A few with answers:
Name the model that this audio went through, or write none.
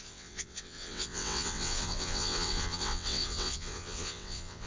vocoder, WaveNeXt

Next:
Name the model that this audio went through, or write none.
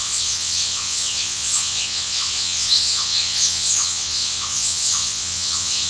vocoder, WaveNeXt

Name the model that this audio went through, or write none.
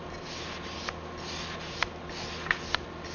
none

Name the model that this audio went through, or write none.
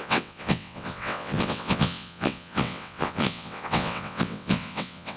vocoder, WaveNeXt